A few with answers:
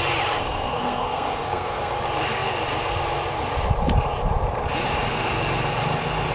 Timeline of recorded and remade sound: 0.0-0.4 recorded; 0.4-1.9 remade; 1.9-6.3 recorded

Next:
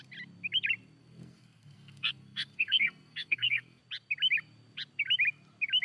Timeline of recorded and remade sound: 0.0-1.0 recorded; 1.0-3.8 remade; 3.8-5.8 recorded

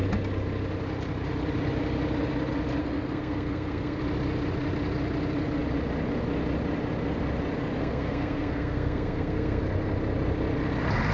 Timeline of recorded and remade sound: 0.0-2.8 recorded; 2.8-4.0 remade; 4.0-7.8 recorded; 7.8-9.6 remade; 9.6-11.1 recorded

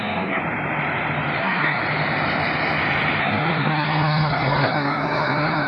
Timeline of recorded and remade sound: 0.0-0.4 remade; 0.4-1.4 recorded; 1.4-1.8 remade; 1.8-3.2 recorded; 3.2-5.7 remade

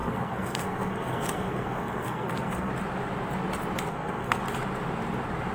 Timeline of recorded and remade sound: 0.0-2.7 remade; 2.7-3.9 recorded; 3.9-4.4 remade; 4.4-5.5 recorded